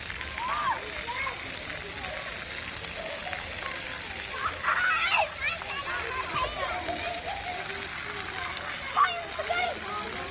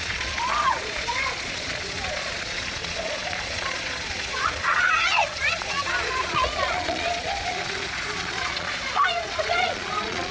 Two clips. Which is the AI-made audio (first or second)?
second